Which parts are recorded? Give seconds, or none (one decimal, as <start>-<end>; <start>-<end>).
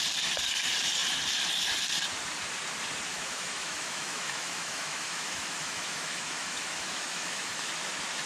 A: 0.0-3.1; 7.7-8.3